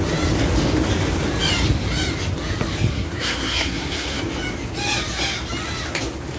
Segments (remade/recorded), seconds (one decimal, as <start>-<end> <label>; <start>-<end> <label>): 0.0-2.9 recorded; 2.9-4.2 remade; 4.2-6.4 recorded